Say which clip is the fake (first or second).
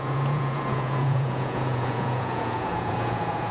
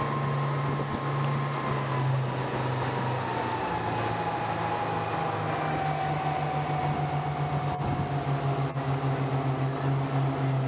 first